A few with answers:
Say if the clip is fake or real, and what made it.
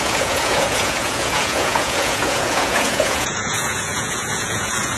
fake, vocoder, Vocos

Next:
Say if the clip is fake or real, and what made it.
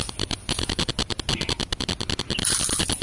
real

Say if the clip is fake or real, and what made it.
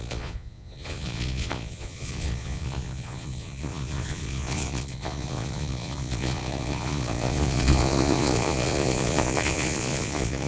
fake, vocoder, Vocos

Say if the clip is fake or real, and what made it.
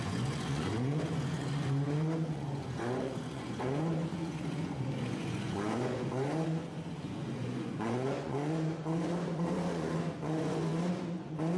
fake, vocoder, Vocos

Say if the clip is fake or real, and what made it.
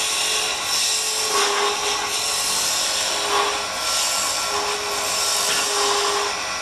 real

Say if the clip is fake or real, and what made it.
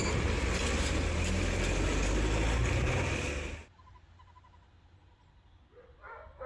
real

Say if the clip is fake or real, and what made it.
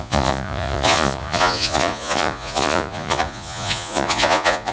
fake, vocoder, Vocos